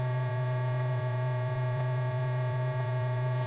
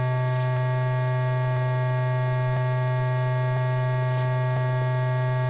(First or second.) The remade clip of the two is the first